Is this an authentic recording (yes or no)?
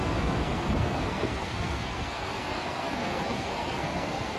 no